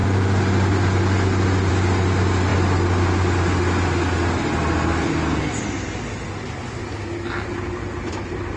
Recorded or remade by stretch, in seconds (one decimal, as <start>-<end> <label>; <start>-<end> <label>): 0.0-8.6 recorded